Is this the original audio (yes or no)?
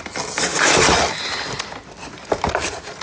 yes